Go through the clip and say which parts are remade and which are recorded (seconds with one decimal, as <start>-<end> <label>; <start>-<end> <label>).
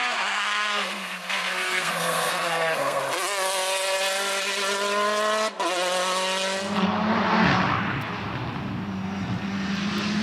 0.0-3.0 remade; 3.0-10.2 recorded